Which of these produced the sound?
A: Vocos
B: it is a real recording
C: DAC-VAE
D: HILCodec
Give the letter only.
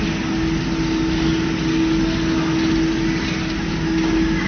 B